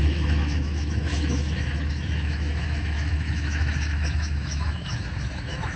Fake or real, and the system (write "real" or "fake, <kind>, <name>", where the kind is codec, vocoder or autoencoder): fake, autoencoder, DAC-VAE